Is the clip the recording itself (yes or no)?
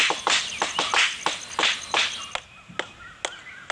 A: yes